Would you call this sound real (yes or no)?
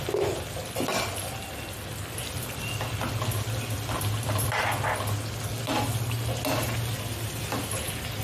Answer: yes